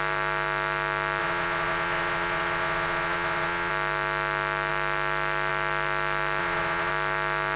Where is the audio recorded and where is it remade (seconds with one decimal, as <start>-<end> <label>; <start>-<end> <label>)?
0.0-1.2 recorded; 1.2-3.7 remade; 3.7-6.4 recorded; 6.4-6.9 remade; 6.9-7.6 recorded